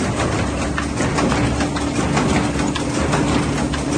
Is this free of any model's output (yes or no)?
yes